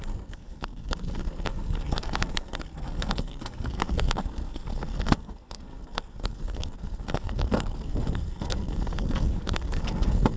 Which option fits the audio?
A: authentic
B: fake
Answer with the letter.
B